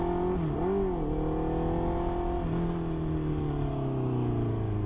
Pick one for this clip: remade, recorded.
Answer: recorded